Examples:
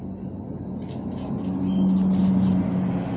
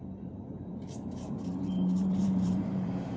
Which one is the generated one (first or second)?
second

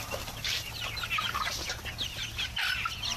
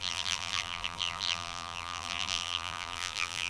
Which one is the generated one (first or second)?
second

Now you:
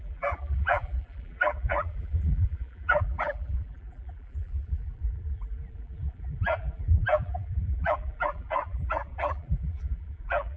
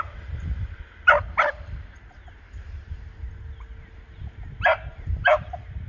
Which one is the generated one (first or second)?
first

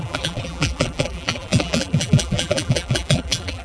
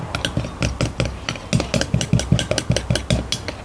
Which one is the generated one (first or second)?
first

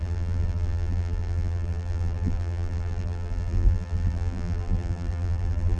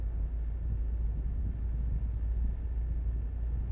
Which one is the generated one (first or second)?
first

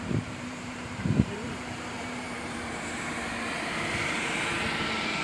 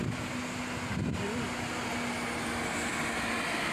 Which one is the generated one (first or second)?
first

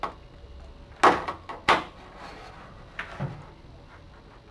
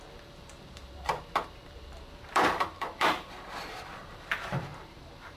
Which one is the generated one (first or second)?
second